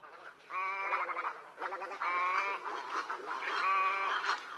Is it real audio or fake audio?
real